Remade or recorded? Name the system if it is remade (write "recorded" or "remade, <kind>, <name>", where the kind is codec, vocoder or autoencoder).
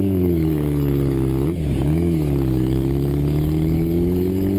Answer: remade, codec, DAC